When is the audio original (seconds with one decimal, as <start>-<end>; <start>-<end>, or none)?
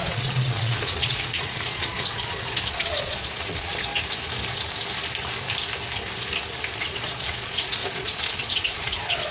3.9-6.8